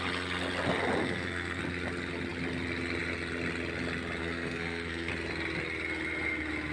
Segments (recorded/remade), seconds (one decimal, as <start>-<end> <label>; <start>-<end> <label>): 0.0-1.0 recorded; 1.0-1.6 remade; 1.6-4.2 recorded; 4.2-5.1 remade; 5.1-6.7 recorded

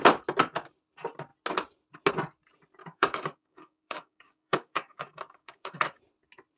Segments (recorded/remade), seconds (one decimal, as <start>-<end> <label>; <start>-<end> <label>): 0.0-2.8 recorded; 2.8-6.0 remade; 6.0-6.6 recorded